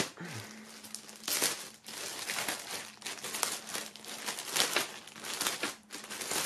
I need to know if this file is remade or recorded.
recorded